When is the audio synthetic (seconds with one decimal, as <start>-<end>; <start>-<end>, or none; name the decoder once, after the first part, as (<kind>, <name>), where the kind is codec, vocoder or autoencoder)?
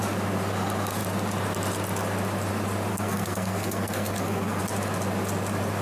2.9-4.6 (codec, SNAC)